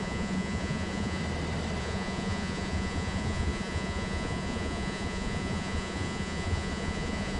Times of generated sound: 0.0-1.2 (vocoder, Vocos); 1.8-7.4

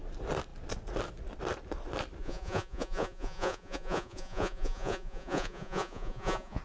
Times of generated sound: 2.2-6.6 (vocoder, Vocos)

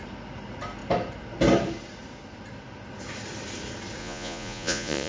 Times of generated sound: 4.0-5.1 (vocoder, Vocos)

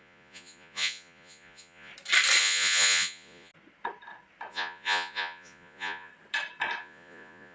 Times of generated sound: 0.0-1.9 (vocoder, Vocos); 2.4-3.5; 4.5-6.1; 6.8-7.5